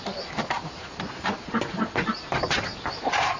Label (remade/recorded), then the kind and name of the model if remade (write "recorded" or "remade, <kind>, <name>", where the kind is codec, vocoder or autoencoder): recorded